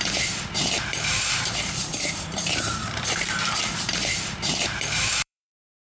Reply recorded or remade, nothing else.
remade